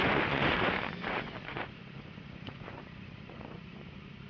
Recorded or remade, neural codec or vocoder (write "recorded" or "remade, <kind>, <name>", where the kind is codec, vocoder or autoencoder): remade, vocoder, Vocos